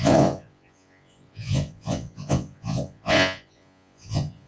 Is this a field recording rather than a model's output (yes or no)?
no